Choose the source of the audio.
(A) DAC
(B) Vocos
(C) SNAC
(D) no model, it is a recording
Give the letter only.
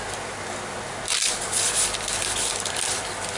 D